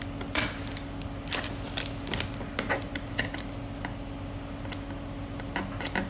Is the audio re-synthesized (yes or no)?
no